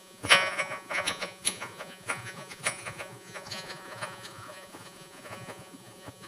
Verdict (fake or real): fake